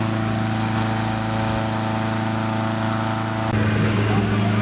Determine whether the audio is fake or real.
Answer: real